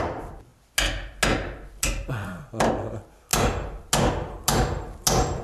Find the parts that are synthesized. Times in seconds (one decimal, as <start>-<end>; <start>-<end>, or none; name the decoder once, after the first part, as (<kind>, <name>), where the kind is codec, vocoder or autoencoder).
none